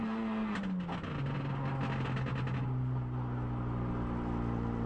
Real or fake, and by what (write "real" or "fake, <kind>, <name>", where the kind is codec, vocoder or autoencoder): real